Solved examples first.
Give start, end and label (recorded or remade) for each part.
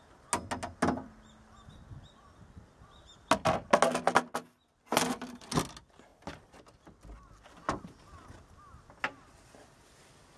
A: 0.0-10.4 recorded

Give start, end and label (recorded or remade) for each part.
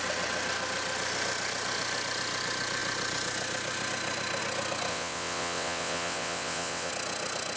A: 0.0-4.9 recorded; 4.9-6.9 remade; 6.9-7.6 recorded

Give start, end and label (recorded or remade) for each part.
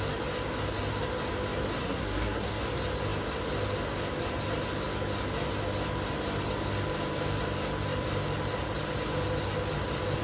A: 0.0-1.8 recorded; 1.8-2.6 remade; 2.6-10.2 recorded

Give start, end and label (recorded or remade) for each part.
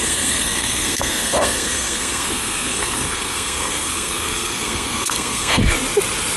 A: 0.0-5.6 remade; 5.6-6.4 recorded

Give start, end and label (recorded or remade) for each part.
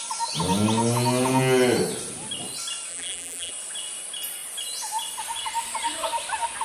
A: 0.0-2.9 recorded; 2.9-3.5 remade; 3.5-6.6 recorded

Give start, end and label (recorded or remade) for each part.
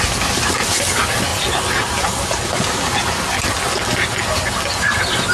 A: 0.0-1.3 recorded; 1.3-2.2 remade; 2.2-5.3 recorded